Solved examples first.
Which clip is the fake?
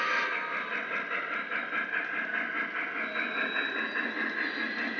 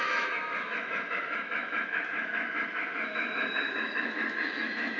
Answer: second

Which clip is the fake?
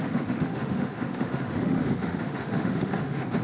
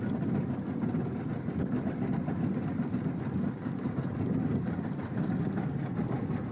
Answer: first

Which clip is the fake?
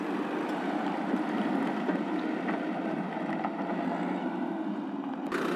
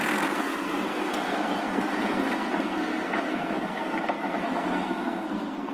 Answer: second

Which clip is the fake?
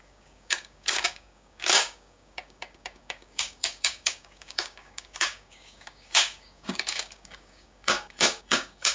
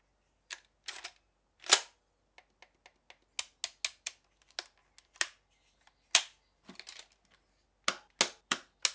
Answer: first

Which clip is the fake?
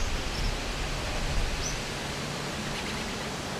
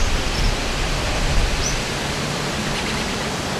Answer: second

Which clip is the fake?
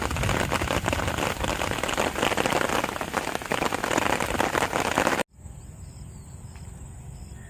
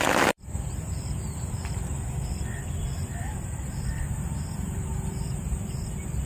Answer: second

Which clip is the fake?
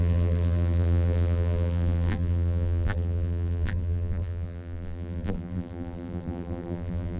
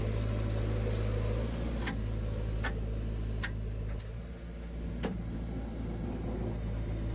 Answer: first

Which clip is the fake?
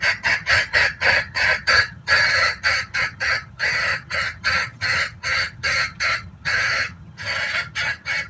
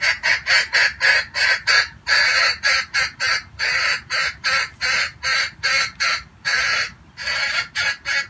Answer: first